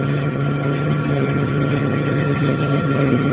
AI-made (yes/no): yes